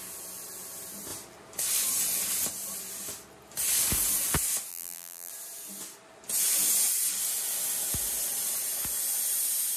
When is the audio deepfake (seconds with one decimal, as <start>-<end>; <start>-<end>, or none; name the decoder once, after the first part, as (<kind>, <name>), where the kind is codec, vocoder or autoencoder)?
4.7-5.3 (vocoder, BigVGAN v2)